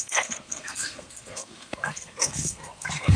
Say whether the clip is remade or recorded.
remade